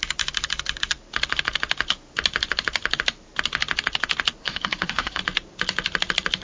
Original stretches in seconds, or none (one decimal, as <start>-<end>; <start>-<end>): 0.0-4.4; 5.2-6.4